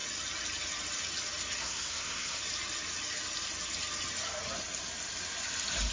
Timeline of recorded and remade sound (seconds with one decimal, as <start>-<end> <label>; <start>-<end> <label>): 0.0-1.6 recorded; 1.6-2.4 remade; 2.4-5.9 recorded